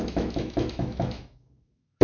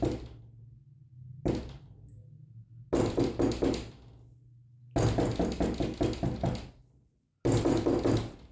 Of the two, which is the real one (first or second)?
second